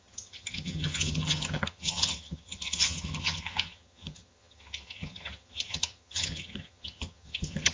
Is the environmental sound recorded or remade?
remade